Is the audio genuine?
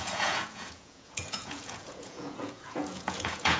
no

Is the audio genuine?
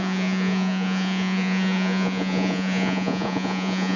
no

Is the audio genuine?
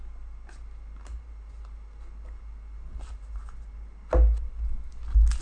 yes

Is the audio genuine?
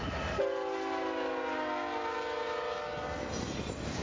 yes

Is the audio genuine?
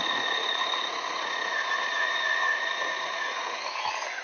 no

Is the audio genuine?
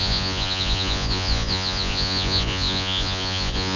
no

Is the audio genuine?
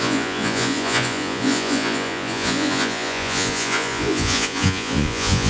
no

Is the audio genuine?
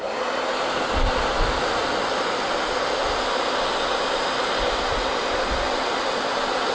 yes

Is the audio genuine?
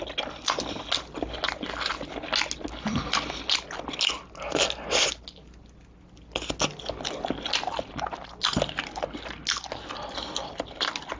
yes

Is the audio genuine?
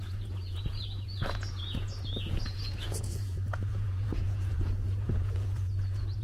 no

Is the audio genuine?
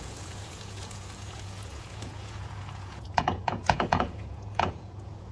no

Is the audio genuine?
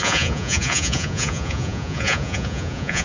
no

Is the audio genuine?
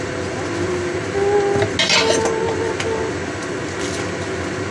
yes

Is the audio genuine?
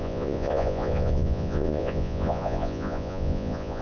no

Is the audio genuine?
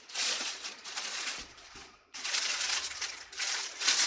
no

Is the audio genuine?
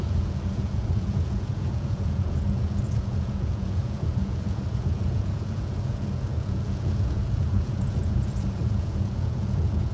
no